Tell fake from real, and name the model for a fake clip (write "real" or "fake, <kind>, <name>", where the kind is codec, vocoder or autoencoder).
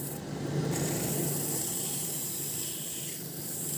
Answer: fake, vocoder, BigVGAN v2